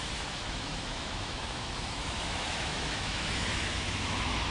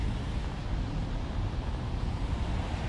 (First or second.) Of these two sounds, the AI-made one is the first